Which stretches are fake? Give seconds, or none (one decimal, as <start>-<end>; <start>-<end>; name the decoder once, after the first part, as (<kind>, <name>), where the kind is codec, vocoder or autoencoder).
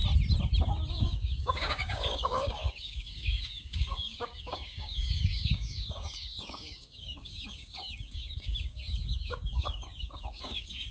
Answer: 0.9-10.9 (codec, DAC)